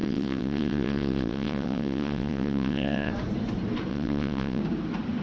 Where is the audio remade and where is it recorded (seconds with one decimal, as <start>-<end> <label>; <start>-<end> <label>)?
0.0-3.1 remade; 3.1-3.9 recorded; 3.9-4.6 remade; 4.6-5.2 recorded